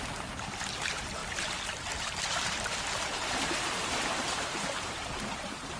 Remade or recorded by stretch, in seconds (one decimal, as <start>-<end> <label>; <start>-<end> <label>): 0.0-1.2 remade; 1.2-2.0 recorded; 2.0-5.8 remade